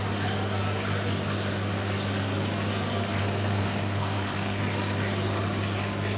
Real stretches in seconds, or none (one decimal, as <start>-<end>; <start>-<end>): 0.0-3.2; 4.6-6.2